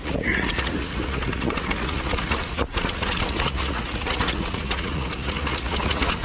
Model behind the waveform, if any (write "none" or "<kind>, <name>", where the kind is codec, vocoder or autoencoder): vocoder, Vocos